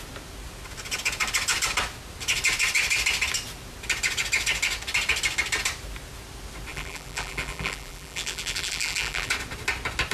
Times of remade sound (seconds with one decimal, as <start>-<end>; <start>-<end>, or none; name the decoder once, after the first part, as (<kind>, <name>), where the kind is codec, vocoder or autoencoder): 6.7-9.3 (vocoder, BigVGAN v2)